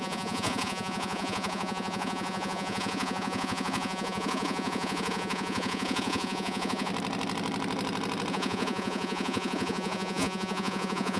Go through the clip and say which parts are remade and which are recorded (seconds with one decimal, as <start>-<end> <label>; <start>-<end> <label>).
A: 0.0-6.9 remade; 6.9-8.3 recorded; 8.3-11.2 remade